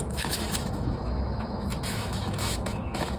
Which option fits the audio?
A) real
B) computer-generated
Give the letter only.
B